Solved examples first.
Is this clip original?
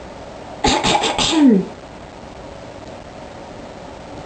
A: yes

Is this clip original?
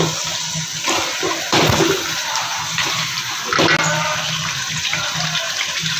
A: yes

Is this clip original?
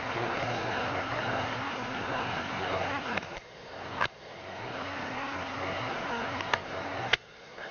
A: no